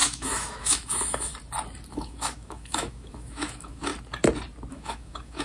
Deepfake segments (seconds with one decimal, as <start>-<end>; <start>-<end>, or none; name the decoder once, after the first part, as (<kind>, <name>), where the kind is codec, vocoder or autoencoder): 0.0-1.3 (autoencoder, DAC-VAE); 1.9-3.9; 4.7-5.4